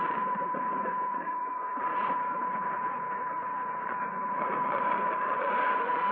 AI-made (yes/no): yes